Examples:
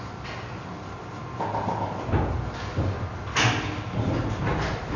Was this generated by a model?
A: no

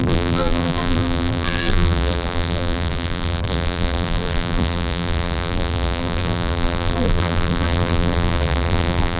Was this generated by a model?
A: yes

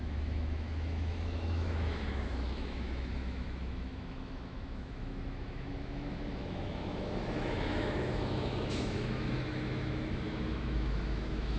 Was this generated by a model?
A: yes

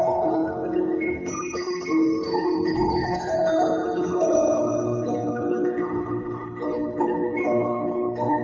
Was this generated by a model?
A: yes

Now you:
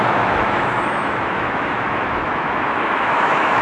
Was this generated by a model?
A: yes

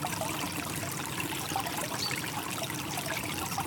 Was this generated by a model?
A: yes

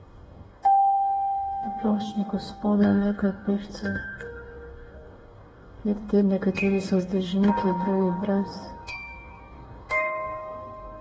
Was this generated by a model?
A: yes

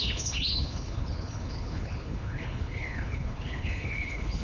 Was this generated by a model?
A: yes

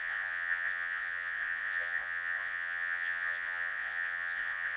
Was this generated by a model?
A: yes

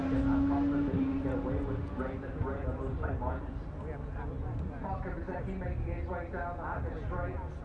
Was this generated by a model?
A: no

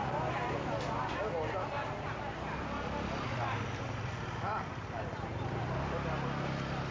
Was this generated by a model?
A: no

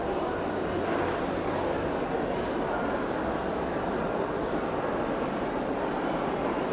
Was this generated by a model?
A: no